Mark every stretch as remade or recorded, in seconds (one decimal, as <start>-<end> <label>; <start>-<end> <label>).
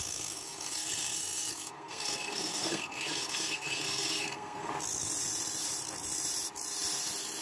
0.0-4.7 remade; 4.7-7.4 recorded